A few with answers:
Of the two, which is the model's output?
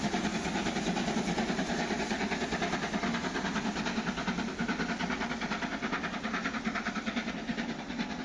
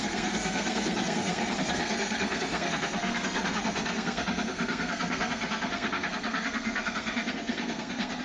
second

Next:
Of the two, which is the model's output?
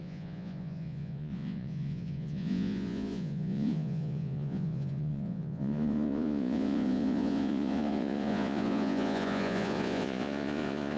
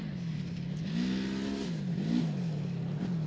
first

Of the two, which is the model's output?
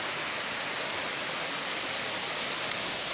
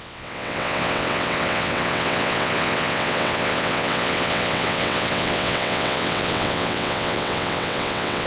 second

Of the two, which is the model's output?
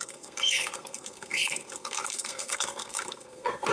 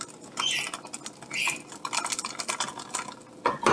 first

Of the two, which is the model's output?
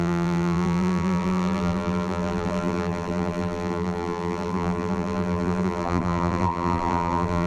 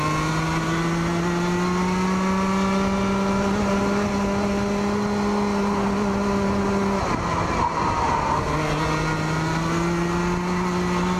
first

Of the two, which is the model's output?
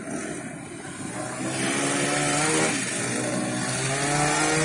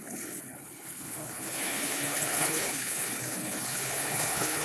second